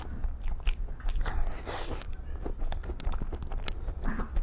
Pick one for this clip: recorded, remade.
recorded